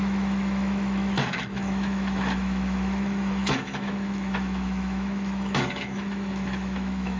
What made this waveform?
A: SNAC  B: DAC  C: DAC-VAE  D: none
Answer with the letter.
C